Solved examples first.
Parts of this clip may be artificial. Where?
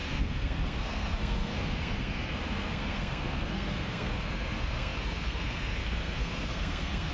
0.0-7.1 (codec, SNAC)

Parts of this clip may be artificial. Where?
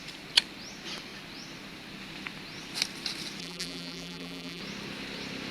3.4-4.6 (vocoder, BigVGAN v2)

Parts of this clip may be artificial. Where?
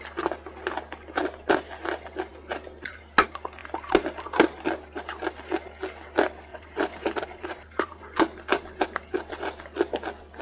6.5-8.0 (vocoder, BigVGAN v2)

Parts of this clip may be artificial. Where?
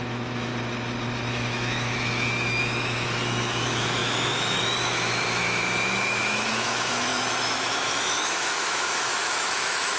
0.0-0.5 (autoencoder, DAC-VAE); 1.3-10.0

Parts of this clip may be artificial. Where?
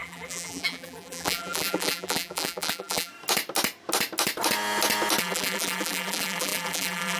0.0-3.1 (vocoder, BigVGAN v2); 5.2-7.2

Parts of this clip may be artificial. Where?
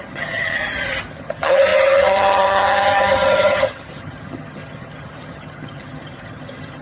0.0-0.6 (vocoder, HiFi-GAN); 1.1-6.8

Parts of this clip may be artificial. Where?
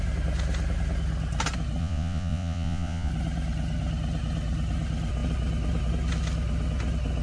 1.8-3.1 (vocoder, Vocos)